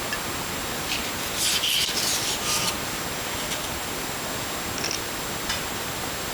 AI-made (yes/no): no